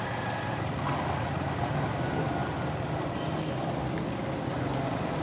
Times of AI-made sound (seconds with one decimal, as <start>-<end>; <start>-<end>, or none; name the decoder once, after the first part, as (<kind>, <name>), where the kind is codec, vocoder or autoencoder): none